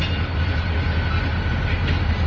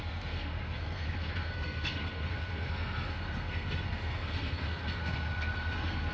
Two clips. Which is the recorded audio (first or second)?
first